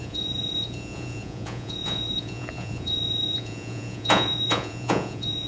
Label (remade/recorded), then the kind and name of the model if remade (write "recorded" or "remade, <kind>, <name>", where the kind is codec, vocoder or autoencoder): remade, vocoder, Vocos